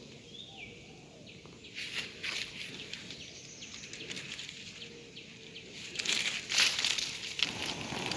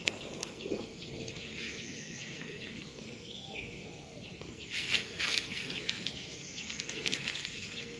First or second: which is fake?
second